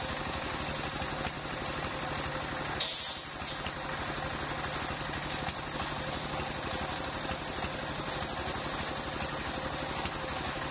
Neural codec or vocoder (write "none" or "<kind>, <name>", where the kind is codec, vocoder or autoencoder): none